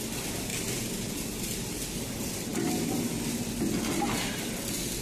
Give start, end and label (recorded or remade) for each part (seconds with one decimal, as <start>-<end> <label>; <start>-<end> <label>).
0.0-5.0 recorded